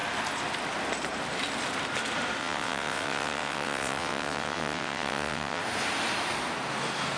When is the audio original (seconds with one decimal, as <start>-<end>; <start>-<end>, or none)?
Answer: 0.0-2.4; 5.6-7.2